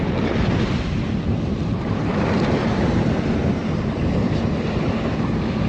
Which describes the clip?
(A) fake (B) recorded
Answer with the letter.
A